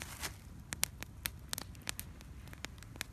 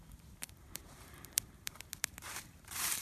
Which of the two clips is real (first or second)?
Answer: first